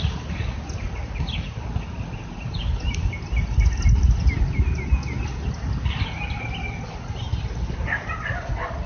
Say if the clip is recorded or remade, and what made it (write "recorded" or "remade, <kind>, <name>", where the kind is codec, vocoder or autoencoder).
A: recorded